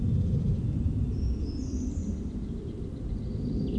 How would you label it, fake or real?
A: real